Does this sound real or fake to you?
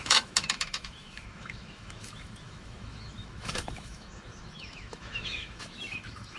fake